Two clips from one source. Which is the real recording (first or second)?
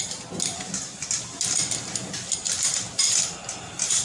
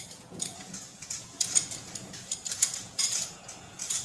first